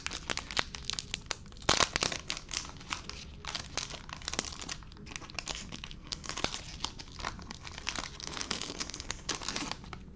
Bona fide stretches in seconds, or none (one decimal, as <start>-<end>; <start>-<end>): 0.0-5.5; 6.3-8.2; 9.3-10.2